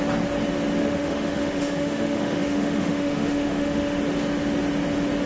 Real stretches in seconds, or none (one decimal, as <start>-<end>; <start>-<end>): 0.0-0.8; 4.0-5.3